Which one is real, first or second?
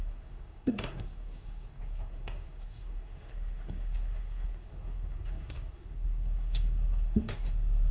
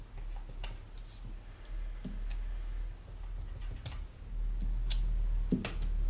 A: second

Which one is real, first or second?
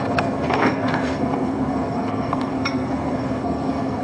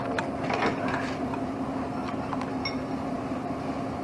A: second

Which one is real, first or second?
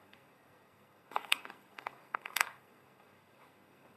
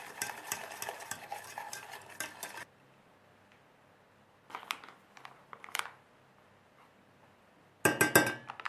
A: second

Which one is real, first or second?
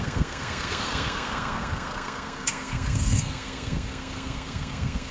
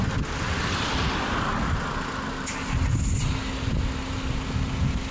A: second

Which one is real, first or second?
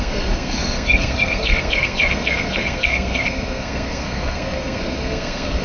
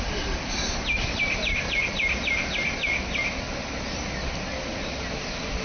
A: second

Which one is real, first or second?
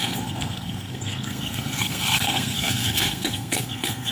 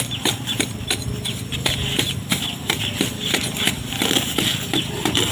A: second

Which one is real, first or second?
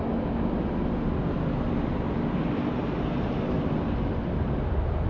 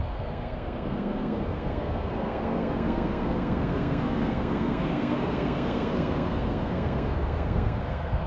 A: first